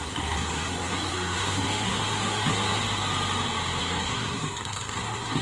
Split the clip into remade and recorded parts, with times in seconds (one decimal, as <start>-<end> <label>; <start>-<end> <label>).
0.0-2.8 remade; 2.8-3.8 recorded; 3.8-5.4 remade